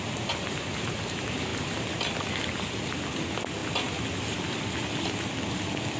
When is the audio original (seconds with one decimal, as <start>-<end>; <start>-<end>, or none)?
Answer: 0.0-6.0